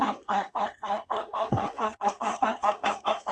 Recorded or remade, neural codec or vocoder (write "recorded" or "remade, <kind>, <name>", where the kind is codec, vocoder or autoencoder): remade, codec, SNAC